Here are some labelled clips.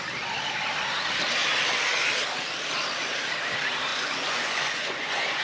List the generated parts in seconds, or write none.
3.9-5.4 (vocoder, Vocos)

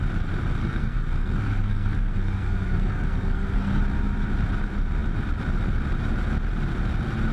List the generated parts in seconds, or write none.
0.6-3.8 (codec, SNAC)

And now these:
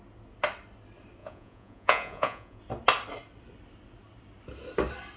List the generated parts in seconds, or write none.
1.2-2.6 (vocoder, Vocos)

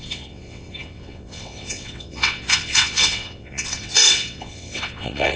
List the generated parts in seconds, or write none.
0.0-5.4 (vocoder, WaveNeXt)

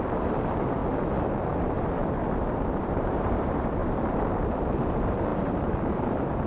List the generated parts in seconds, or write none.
0.0-0.8 (vocoder, BigVGAN v2); 1.6-2.0; 2.8-3.8; 4.7-6.5

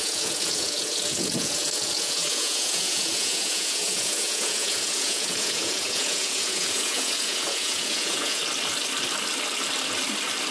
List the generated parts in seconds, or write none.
0.0-8.4 (vocoder, Vocos)

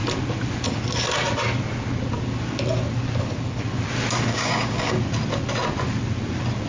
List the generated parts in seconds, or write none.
4.3-5.0 (codec, DAC)